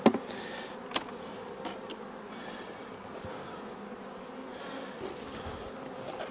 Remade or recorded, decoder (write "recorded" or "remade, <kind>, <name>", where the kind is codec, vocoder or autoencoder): recorded